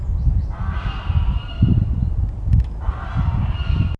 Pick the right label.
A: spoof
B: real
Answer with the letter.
B